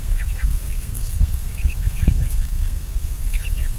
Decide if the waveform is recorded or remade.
remade